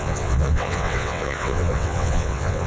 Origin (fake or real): fake